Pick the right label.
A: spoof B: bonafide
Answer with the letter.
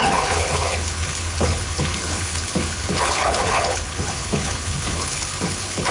A